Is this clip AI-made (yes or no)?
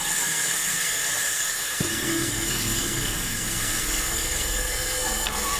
yes